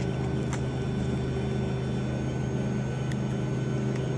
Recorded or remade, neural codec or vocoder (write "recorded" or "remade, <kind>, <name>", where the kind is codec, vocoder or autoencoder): recorded